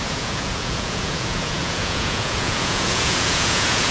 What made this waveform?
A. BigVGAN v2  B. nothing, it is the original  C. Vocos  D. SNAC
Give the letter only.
C